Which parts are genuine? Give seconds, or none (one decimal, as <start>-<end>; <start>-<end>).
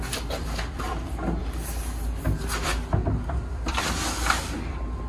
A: 1.4-2.2; 2.7-3.7